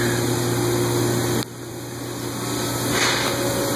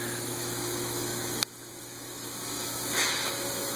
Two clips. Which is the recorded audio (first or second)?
first